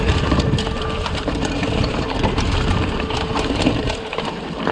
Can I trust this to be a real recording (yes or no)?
no